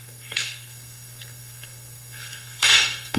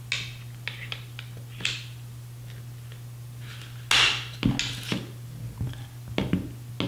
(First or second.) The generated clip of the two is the first